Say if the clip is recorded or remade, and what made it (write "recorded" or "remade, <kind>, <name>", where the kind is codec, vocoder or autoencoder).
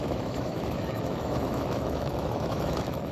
remade, autoencoder, DAC-VAE